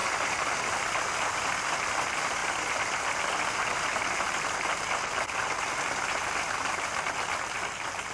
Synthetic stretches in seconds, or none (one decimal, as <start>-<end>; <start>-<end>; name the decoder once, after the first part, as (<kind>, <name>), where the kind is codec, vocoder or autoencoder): none